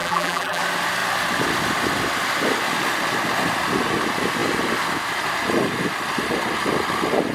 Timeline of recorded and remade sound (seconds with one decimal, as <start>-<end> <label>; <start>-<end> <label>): 0.0-0.6 remade; 0.6-7.3 recorded